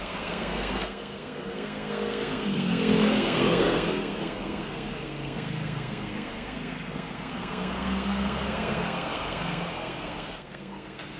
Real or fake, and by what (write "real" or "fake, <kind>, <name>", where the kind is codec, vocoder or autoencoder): fake, codec, SNAC